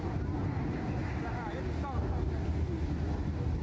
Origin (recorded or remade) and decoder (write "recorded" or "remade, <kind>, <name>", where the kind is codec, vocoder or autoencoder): recorded